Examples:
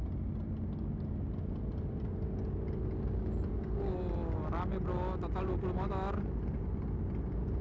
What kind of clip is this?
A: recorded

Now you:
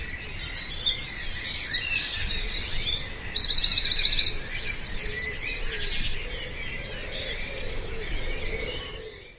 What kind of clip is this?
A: recorded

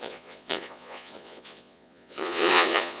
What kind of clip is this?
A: remade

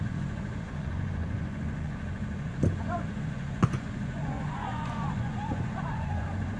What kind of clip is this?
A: remade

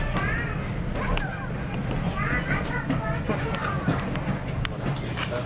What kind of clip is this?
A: recorded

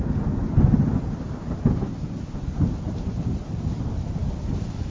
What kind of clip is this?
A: recorded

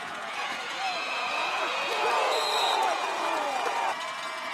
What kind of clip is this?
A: remade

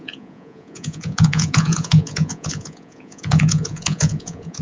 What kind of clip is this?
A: remade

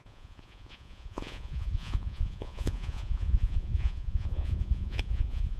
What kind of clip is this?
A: remade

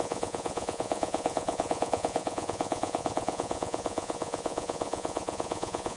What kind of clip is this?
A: remade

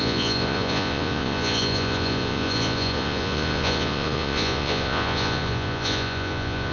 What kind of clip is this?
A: remade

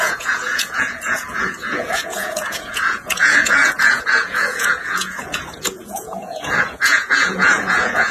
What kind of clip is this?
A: remade